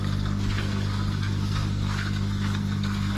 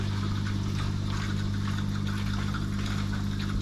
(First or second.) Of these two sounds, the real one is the second